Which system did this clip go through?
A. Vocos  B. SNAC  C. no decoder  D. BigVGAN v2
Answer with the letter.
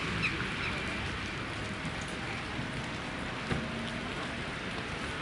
C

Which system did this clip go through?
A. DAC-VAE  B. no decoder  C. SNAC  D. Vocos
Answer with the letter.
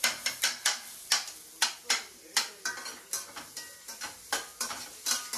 B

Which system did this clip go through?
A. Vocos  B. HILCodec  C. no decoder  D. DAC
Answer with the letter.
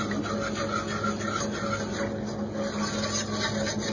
C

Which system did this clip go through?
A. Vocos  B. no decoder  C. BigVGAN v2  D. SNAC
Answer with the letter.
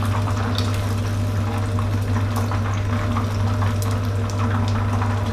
B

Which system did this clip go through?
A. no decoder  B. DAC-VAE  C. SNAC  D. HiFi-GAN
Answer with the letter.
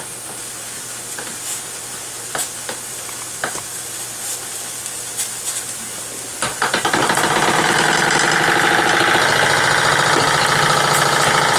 A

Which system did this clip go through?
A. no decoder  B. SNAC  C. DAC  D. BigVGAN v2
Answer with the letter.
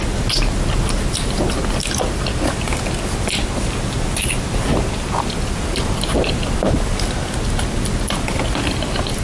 A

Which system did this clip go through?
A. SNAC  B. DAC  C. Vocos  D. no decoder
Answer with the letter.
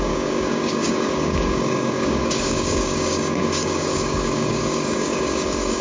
B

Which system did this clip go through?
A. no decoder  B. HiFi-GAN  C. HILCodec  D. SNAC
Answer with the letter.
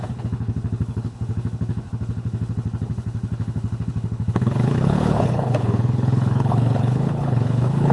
C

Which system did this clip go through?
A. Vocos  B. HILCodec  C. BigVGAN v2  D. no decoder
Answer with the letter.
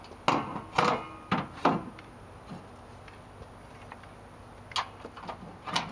D